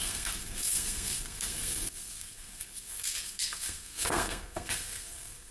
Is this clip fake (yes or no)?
yes